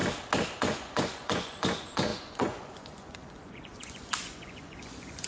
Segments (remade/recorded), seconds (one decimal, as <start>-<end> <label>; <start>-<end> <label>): 0.0-0.6 recorded; 0.6-5.3 remade